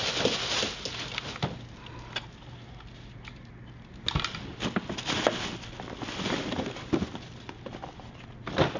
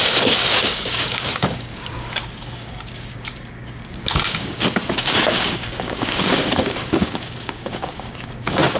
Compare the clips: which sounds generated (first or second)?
second